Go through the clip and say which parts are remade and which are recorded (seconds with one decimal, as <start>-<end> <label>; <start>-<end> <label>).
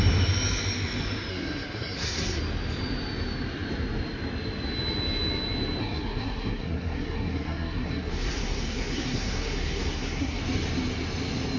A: 0.0-1.3 recorded; 1.3-2.4 remade; 2.4-5.8 recorded; 5.8-10.4 remade; 10.4-11.6 recorded